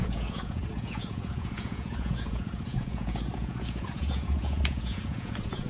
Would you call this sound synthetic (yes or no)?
yes